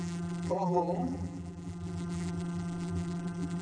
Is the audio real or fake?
fake